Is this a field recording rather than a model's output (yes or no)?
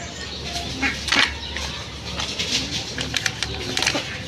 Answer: yes